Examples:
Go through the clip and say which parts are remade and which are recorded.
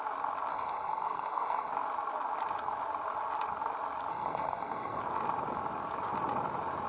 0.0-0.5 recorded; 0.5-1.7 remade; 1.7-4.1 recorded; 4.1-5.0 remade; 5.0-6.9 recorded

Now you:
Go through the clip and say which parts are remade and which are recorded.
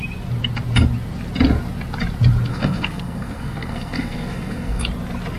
0.0-2.5 recorded; 2.5-4.8 remade; 4.8-5.4 recorded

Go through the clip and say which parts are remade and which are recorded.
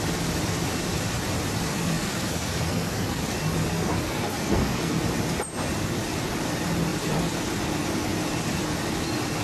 0.0-1.7 recorded; 1.7-3.2 remade; 3.2-3.7 recorded; 3.7-5.0 remade; 5.0-9.4 recorded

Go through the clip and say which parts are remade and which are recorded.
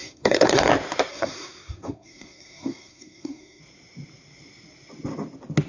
0.0-0.7 remade; 0.7-1.1 recorded; 1.1-3.6 remade; 3.6-5.7 recorded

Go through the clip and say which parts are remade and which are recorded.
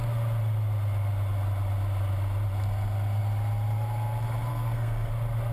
0.0-4.5 recorded; 4.5-5.1 remade; 5.1-5.5 recorded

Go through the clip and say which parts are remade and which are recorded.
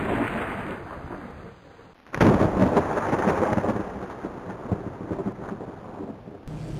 0.0-6.8 recorded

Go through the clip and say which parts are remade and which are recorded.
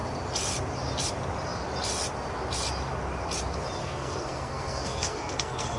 0.0-3.8 recorded; 3.8-5.8 remade